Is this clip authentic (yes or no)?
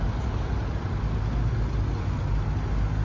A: yes